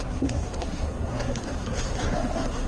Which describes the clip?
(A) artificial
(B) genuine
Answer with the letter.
A